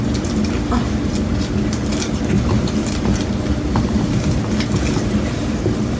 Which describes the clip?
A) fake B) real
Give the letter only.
B